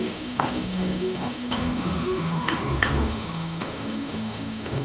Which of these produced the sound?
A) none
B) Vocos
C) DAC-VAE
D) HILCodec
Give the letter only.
C